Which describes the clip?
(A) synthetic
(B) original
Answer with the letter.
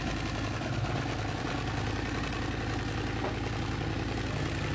B